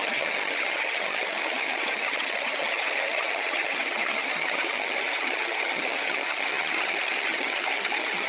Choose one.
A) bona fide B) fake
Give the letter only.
B